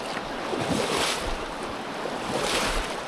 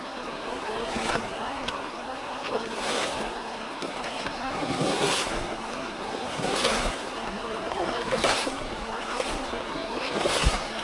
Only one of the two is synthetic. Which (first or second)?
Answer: second